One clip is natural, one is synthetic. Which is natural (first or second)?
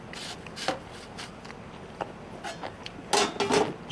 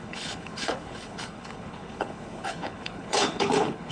first